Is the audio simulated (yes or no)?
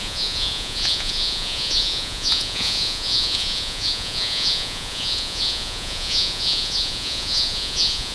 yes